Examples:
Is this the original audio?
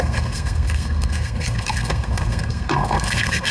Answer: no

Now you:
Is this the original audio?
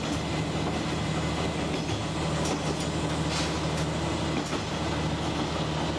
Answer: yes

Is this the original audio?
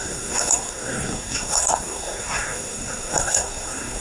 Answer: no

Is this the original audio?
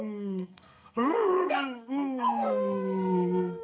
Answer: no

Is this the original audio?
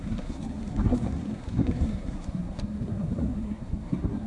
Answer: no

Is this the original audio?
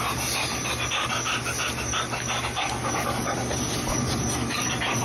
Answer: yes